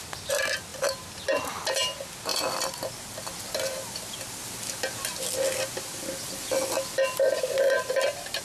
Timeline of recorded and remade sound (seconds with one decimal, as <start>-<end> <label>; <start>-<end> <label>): 0.0-8.4 recorded